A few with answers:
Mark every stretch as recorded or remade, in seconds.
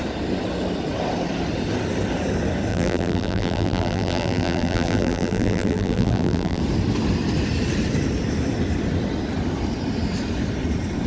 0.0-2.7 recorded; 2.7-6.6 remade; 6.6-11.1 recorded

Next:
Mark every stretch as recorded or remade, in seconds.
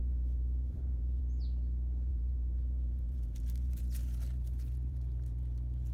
0.0-1.2 remade; 1.2-2.1 recorded; 2.1-5.9 remade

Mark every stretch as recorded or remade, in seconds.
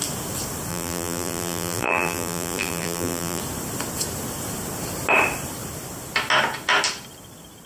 0.0-0.7 recorded; 0.7-3.4 remade; 3.4-7.7 recorded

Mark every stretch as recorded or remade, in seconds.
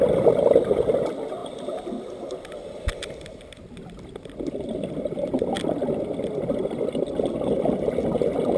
0.0-1.4 recorded; 1.4-3.6 remade; 3.6-8.6 recorded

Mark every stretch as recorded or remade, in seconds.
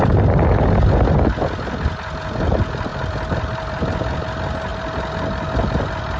0.0-2.9 recorded; 2.9-4.3 remade; 4.3-4.7 recorded; 4.7-6.2 remade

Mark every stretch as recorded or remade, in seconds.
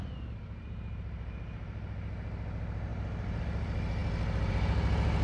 0.0-5.2 recorded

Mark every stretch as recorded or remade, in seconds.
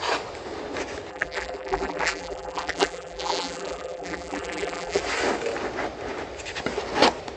0.0-1.1 recorded; 1.1-5.0 remade; 5.0-7.4 recorded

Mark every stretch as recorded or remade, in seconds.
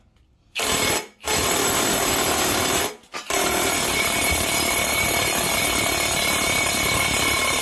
0.0-3.1 recorded; 3.1-5.6 remade; 5.6-7.6 recorded